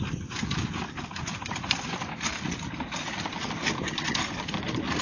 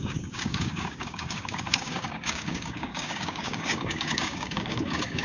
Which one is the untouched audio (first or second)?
first